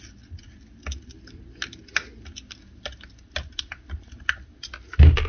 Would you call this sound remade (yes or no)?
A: no